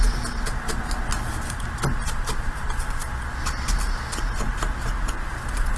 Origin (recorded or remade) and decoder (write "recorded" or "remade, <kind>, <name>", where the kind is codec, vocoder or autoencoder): recorded